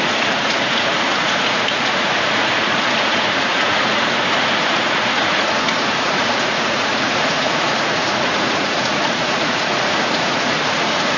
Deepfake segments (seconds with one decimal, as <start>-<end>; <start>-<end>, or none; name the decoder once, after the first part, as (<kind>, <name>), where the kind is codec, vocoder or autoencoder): 0.0-11.2 (vocoder, Vocos)